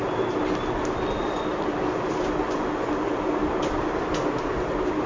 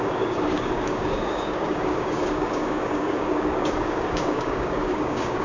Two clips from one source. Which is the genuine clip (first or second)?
first